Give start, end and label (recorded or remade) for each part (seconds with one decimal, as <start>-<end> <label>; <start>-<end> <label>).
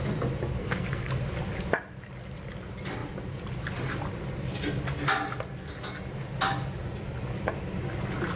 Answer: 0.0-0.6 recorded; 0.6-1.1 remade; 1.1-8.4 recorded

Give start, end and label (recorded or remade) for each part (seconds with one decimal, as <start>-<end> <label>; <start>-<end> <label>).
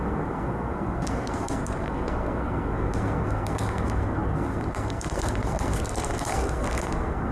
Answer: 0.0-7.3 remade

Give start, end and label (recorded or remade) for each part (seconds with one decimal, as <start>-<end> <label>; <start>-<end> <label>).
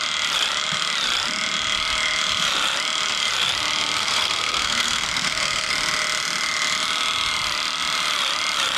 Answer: 0.0-4.0 recorded; 4.0-5.7 remade; 5.7-8.8 recorded